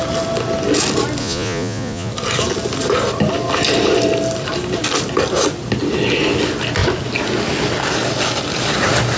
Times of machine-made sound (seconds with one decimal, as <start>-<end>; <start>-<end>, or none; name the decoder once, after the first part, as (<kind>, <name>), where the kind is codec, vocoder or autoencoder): 1.2-2.1 (vocoder, Vocos)